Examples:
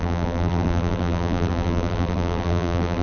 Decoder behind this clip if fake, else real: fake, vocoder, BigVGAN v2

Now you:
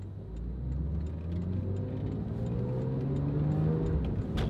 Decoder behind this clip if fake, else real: real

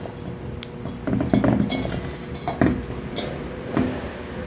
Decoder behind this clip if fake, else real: real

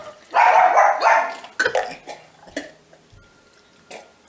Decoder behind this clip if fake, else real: real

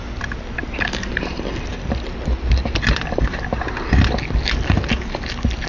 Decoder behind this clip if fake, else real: real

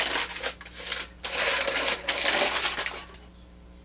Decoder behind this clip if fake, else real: real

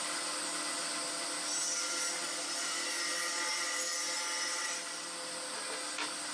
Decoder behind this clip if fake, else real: real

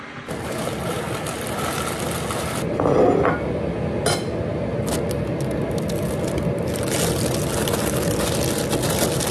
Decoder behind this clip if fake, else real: real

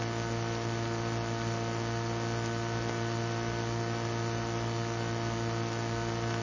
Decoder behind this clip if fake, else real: real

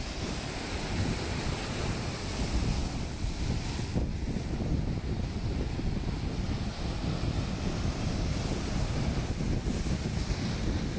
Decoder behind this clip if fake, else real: real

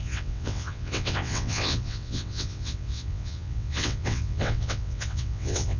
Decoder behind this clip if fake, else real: fake, vocoder, WaveNeXt